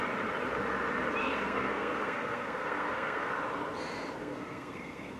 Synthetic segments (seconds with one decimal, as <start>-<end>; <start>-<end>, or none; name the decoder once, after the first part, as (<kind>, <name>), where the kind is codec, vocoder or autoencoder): 1.2-3.3 (codec, SNAC); 4.2-5.2